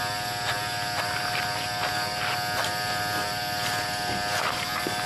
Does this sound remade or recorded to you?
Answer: recorded